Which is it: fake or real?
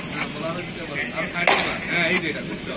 real